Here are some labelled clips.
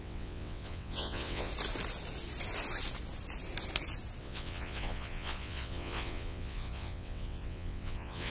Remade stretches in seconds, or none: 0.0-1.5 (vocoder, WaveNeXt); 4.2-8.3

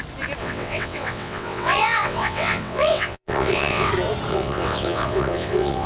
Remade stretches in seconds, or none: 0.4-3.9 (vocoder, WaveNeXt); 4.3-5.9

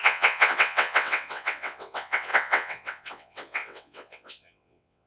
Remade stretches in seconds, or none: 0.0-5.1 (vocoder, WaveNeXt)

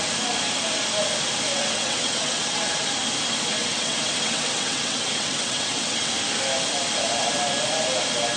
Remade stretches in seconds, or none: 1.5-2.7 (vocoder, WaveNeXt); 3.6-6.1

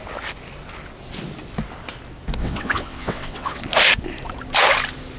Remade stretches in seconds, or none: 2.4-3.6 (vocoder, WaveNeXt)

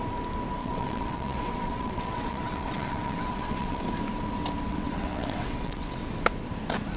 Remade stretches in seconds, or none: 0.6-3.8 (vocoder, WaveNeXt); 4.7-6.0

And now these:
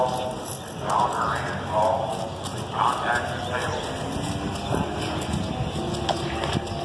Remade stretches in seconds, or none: none

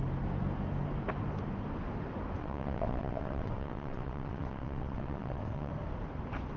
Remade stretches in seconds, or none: 2.4-5.7 (vocoder, WaveNeXt)